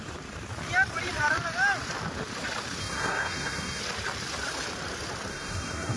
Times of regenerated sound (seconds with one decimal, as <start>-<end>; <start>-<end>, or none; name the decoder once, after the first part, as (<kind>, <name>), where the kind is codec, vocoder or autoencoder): 2.8-3.8 (codec, SNAC); 5.3-6.0